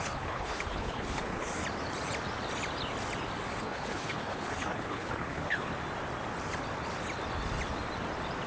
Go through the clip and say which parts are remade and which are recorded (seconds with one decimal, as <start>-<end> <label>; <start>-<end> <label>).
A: 0.0-1.5 remade; 1.5-3.6 recorded; 3.6-5.7 remade; 5.7-8.5 recorded